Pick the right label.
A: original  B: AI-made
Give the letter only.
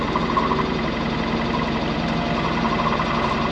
A